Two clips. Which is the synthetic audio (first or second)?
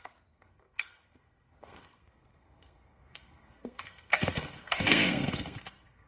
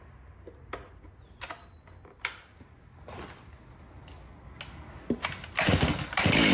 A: first